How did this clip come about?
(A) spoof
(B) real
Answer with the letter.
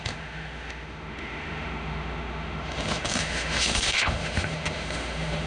A